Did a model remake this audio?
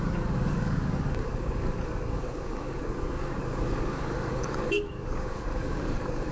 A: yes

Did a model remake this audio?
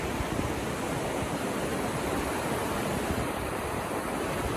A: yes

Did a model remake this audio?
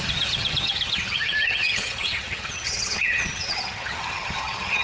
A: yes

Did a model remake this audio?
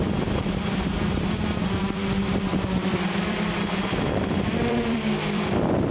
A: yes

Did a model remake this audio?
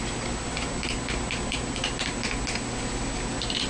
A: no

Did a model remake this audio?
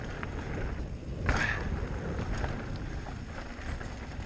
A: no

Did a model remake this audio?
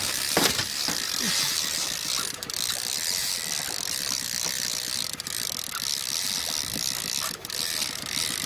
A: yes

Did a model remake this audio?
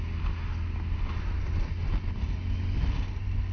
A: no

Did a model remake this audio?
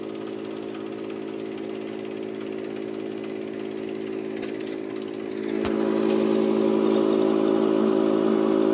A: no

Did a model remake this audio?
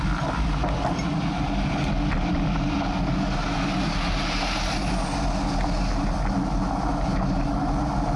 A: no